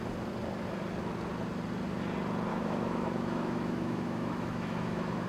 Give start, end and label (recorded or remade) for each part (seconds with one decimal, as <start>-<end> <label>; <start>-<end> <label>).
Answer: 0.0-2.5 recorded; 2.5-5.3 remade